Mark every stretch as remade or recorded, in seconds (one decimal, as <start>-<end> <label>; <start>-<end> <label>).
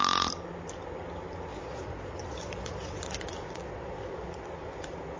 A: 0.0-1.5 recorded; 1.5-4.5 remade; 4.5-5.2 recorded